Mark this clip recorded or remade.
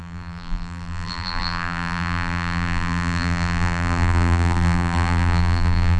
remade